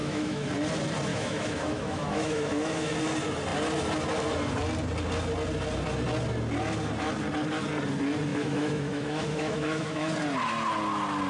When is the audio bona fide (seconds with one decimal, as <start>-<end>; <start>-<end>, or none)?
0.5-1.1; 3.0-8.3; 10.1-11.3